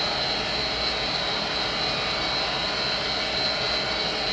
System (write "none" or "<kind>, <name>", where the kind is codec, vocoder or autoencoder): none